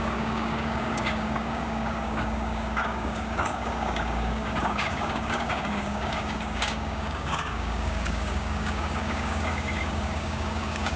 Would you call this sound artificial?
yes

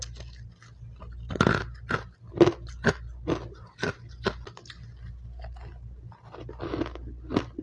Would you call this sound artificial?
no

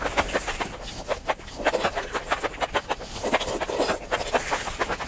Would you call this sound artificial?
no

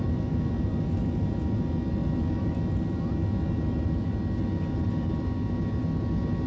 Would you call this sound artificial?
no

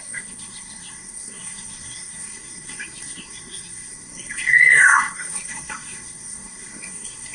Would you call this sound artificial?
yes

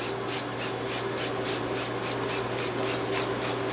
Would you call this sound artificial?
no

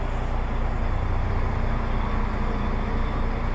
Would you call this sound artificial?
no